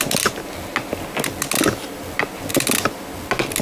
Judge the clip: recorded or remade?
recorded